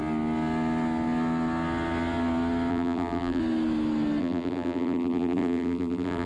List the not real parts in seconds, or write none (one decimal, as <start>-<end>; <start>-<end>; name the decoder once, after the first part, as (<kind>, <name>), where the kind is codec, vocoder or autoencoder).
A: 2.7-3.4 (vocoder, BigVGAN v2); 4.2-6.3